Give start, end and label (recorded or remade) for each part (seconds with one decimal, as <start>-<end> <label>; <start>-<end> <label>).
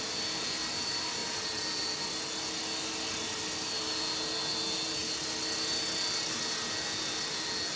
0.0-7.8 recorded